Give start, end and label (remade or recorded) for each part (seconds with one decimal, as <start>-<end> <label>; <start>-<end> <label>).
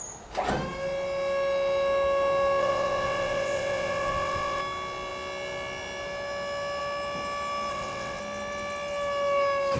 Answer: 0.0-2.6 recorded; 2.6-4.6 remade; 4.6-7.7 recorded; 7.7-8.2 remade; 8.2-9.8 recorded